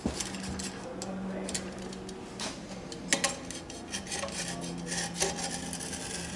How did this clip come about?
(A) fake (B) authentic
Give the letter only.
B